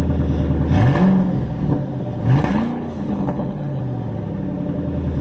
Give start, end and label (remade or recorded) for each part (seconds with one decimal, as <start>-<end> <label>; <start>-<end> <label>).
0.0-2.5 recorded; 2.5-3.8 remade; 3.8-5.2 recorded